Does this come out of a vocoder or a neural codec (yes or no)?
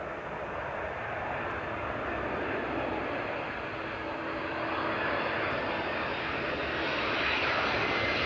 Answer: no